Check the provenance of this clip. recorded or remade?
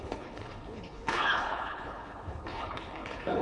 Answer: remade